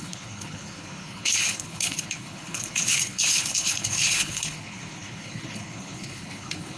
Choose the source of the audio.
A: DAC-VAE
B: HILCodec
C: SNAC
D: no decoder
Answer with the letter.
B